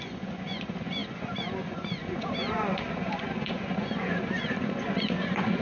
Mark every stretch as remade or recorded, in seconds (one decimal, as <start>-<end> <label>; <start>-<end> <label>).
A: 0.0-5.6 remade